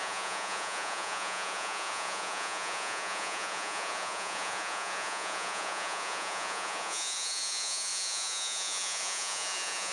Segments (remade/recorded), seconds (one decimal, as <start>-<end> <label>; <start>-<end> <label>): 0.0-9.9 remade